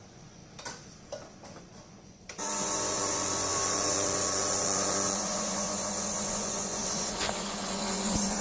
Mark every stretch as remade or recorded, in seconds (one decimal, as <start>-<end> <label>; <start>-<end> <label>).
0.0-0.4 remade; 0.4-1.6 recorded; 1.6-8.4 remade